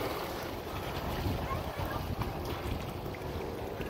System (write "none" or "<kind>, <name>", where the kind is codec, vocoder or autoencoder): vocoder, BigVGAN v2